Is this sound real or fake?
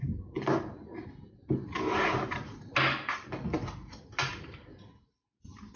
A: real